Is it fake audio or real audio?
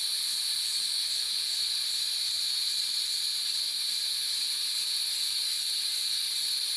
real